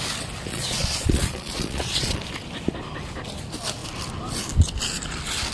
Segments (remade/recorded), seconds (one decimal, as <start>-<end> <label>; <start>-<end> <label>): 0.0-0.5 recorded; 0.5-2.2 remade; 2.2-5.5 recorded